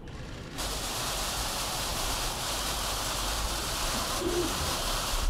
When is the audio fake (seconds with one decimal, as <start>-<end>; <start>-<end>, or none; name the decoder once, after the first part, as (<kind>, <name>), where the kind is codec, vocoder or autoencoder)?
0.0-5.3 (vocoder, BigVGAN v2)

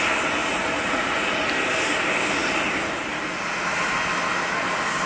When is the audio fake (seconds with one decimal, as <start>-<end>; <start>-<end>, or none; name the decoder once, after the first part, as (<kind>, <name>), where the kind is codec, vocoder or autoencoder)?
0.4-1.5 (vocoder, Vocos)

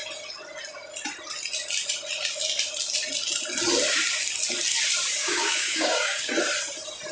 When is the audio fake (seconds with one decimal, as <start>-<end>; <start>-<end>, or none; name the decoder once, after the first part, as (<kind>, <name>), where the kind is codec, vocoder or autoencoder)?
5.2-6.3 (codec, DAC)

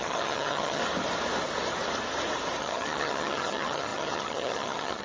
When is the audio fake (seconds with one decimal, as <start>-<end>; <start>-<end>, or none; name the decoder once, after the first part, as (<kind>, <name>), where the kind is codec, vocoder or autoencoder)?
0.0-0.8 (vocoder, HiFi-GAN); 2.6-5.0

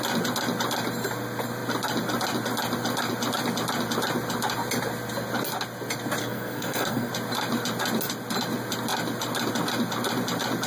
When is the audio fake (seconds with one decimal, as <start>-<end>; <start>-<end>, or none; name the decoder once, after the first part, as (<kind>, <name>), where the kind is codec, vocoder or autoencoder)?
6.2-7.1 (codec, SNAC)

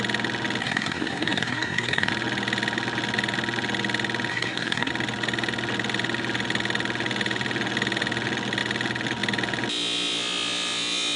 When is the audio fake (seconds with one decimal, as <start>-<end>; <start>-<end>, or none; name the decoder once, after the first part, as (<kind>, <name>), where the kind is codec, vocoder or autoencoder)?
0.6-2.1 (codec, SNAC); 4.3-4.9

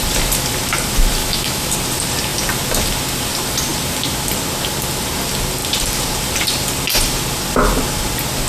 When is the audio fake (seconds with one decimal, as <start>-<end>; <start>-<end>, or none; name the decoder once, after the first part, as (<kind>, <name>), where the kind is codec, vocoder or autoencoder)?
1.2-1.7 (autoencoder, DAC-VAE)

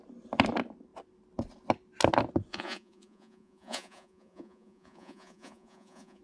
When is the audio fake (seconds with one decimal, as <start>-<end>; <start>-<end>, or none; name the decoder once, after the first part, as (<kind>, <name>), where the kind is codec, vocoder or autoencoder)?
2.5-6.2 (vocoder, Vocos)